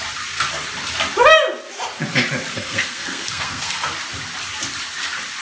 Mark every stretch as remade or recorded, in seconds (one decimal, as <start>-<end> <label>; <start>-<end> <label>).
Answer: 0.0-2.5 recorded; 2.5-3.9 remade; 3.9-5.4 recorded